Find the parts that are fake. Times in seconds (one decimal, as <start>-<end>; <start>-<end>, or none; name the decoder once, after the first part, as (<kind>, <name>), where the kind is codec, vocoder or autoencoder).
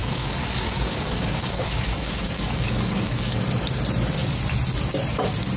0.0-3.4 (codec, DAC)